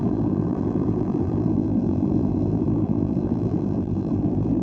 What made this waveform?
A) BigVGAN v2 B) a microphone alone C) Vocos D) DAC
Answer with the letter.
A